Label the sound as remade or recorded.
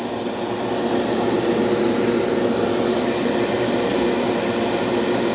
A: recorded